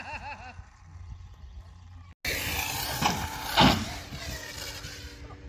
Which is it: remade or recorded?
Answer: recorded